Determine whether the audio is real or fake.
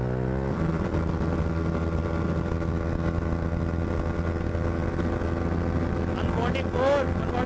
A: real